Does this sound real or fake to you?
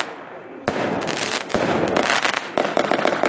real